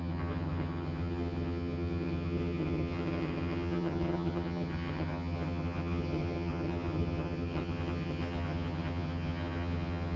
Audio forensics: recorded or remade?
remade